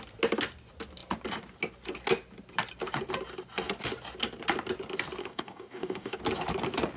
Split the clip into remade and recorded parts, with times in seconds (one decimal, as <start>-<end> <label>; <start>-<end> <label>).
0.0-5.2 recorded; 5.2-6.2 remade; 6.2-7.0 recorded